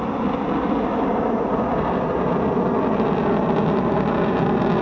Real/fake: real